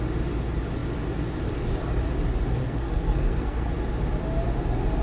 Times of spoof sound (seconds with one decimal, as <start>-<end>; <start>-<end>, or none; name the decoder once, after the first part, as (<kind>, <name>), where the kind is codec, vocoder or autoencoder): 2.6-3.7 (codec, SNAC)

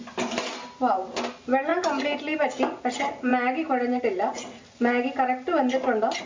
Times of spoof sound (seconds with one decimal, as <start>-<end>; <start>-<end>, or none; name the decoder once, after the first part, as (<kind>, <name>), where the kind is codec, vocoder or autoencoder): none

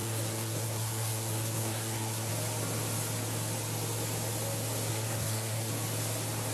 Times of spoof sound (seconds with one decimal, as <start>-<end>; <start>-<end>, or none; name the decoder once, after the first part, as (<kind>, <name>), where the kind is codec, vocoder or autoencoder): 0.0-2.3 (codec, SNAC); 4.9-5.7

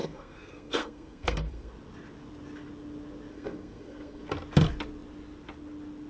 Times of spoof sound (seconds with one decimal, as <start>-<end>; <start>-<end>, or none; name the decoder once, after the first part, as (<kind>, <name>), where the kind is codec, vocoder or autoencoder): 0.0-1.7 (codec, SNAC); 3.3-4.2

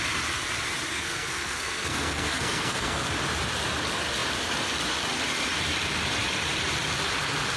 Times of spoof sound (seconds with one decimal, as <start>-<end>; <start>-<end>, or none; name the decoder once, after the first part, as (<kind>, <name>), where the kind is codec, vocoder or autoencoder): 0.9-3.1 (codec, SNAC)